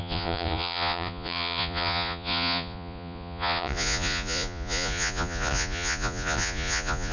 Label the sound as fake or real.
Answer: fake